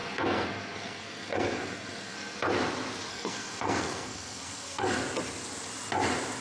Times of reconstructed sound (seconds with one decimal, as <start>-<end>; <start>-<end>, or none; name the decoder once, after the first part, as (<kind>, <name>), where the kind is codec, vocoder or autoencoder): 0.0-2.4 (codec, SNAC); 3.1-5.0